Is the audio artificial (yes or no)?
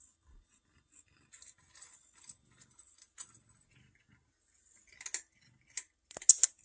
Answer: no